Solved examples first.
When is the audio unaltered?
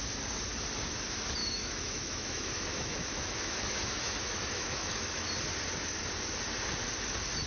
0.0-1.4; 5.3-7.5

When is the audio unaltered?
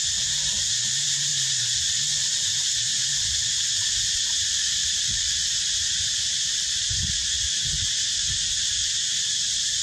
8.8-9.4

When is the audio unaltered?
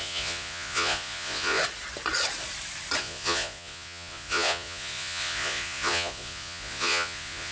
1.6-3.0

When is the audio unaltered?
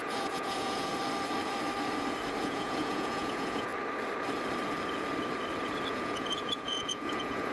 0.9-2.4; 3.7-5.9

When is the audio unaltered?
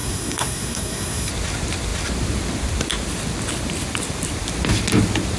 1.3-5.4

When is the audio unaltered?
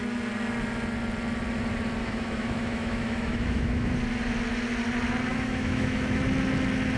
0.0-2.0; 3.9-5.3; 6.2-7.0